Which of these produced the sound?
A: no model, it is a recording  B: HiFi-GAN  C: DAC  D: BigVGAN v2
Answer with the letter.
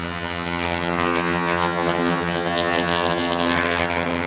B